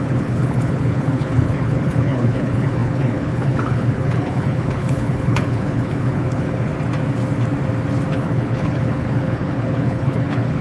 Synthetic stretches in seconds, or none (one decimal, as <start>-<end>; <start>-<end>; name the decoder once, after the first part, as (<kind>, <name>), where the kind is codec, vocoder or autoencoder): 0.0-6.7 (codec, HILCodec); 8.1-10.6